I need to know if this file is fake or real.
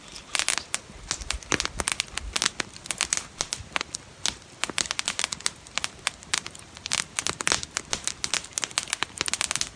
real